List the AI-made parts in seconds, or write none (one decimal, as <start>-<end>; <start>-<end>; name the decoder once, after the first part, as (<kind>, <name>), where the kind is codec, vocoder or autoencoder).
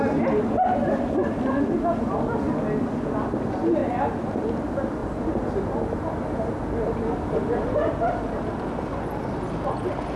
none